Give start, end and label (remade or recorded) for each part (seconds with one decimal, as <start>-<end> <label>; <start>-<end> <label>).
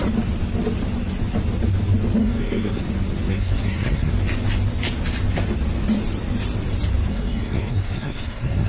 0.0-2.2 recorded; 2.2-2.8 remade; 2.8-3.3 recorded; 3.3-4.1 remade; 4.1-7.1 recorded; 7.1-8.7 remade